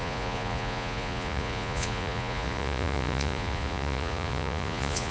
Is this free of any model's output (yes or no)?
no